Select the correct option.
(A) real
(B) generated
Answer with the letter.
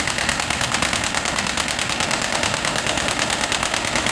B